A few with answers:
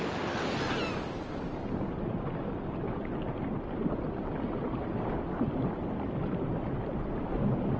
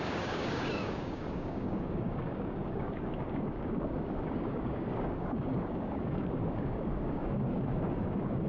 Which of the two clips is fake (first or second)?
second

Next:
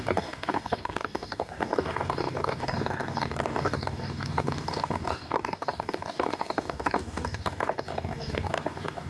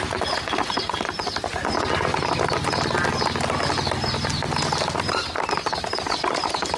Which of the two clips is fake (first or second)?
first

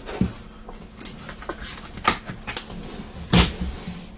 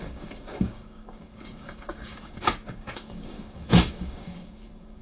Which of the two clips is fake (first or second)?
second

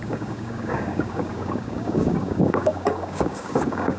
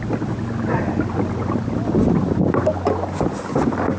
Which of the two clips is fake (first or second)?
first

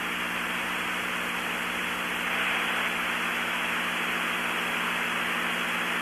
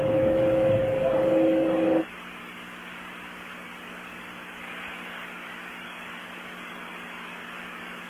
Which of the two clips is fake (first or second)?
second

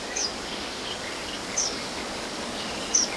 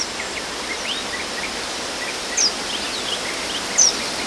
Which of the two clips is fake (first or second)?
first